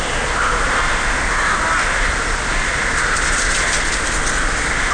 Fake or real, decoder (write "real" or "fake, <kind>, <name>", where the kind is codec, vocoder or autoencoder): real